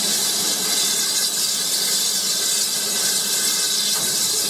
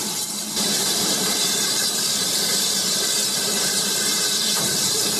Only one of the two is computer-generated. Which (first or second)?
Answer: second